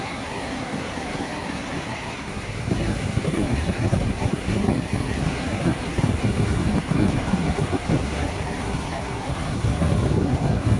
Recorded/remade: remade